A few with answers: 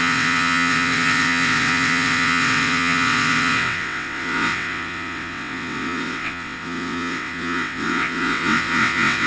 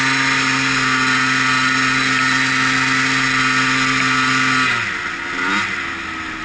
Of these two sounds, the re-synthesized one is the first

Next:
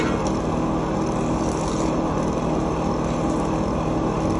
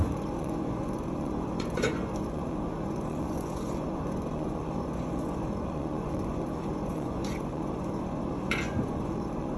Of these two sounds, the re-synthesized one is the second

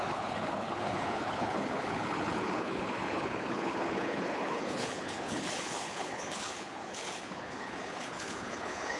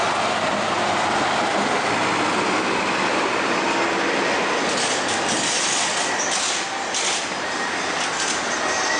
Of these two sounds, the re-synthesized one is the first